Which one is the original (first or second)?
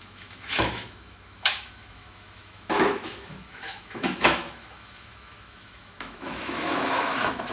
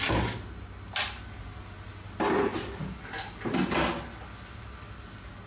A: second